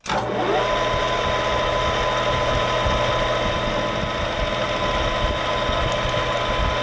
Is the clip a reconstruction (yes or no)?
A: no